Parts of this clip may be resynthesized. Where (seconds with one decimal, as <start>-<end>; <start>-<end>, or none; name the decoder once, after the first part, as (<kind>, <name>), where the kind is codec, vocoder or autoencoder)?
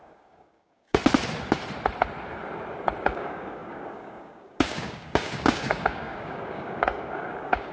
0.0-1.0 (codec, DAC); 3.0-7.7